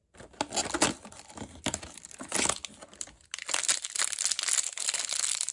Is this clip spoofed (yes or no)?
no